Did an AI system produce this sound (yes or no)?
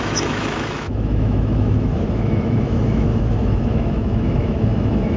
yes